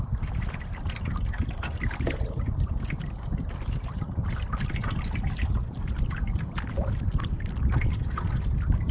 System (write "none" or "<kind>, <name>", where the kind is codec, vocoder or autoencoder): none